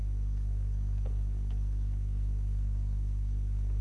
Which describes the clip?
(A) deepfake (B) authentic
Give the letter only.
A